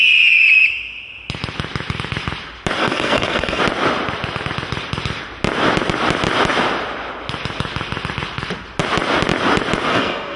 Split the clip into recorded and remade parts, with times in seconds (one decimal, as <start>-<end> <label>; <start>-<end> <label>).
0.0-2.8 recorded; 2.8-3.6 remade; 3.6-9.9 recorded; 9.9-10.4 remade